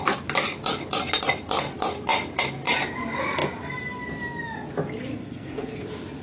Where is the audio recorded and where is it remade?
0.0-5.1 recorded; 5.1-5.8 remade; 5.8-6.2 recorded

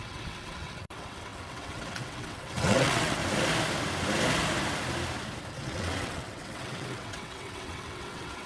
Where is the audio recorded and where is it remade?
0.0-3.2 remade; 3.2-5.5 recorded; 5.5-8.5 remade

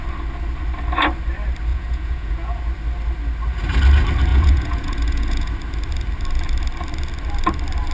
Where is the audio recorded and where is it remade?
0.0-1.7 recorded; 1.7-2.6 remade; 2.6-4.3 recorded; 4.3-5.5 remade; 5.5-7.9 recorded

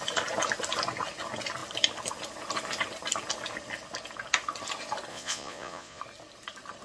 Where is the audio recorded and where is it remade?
0.0-5.1 recorded; 5.1-6.0 remade; 6.0-6.8 recorded

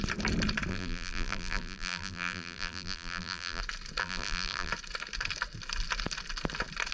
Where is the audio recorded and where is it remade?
0.0-0.7 recorded; 0.7-3.6 remade; 3.6-4.0 recorded; 4.0-4.7 remade; 4.7-6.9 recorded

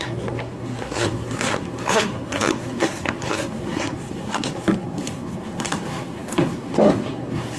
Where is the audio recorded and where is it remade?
0.0-7.6 remade

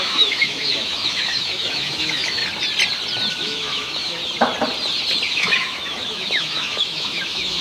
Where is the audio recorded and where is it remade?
0.0-2.4 remade; 2.4-3.3 recorded; 3.3-4.2 remade; 4.2-5.3 recorded; 5.3-7.6 remade

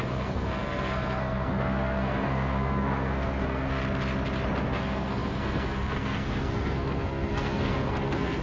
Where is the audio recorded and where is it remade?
0.0-3.8 remade; 3.8-4.6 recorded; 4.6-8.4 remade